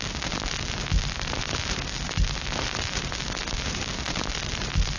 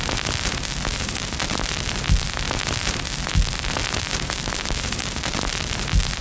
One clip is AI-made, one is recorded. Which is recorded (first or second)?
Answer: first